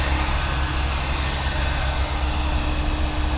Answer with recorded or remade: recorded